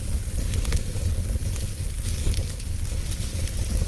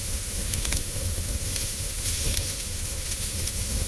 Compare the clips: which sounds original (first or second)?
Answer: first